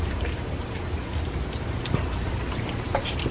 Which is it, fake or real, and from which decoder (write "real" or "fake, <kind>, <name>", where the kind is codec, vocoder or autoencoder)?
real